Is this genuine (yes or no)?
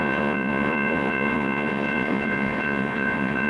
no